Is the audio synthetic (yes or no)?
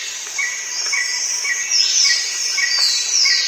no